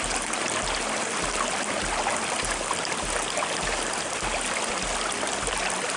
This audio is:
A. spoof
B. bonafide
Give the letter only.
B